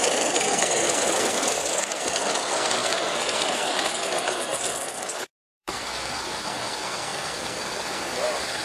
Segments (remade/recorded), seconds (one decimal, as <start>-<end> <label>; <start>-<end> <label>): 0.0-8.6 remade